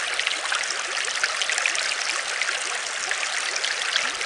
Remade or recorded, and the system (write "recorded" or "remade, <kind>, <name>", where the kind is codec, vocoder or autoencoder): recorded